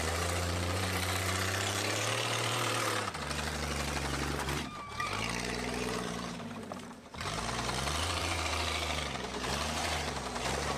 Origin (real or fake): fake